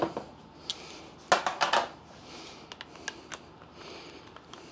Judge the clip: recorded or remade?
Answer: recorded